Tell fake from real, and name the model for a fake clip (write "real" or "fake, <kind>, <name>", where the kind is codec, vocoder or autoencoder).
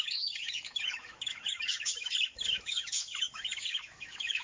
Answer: fake, autoencoder, DAC-VAE